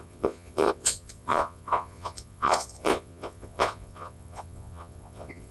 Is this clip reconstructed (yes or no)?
yes